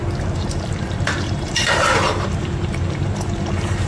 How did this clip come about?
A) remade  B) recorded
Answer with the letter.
A